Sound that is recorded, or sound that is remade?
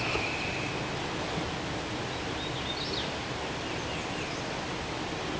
recorded